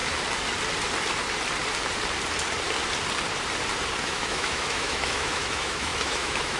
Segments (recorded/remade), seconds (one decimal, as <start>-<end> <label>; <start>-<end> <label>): 0.0-4.0 recorded; 4.0-6.6 remade